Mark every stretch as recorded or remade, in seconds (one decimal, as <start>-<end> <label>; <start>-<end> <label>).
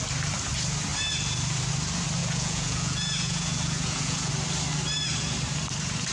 0.0-2.2 recorded; 2.2-4.3 remade; 4.3-6.1 recorded